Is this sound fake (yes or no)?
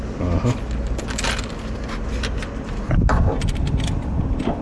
no